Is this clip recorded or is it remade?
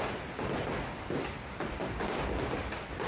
recorded